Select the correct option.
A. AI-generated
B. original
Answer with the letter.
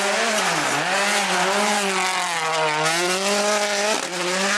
B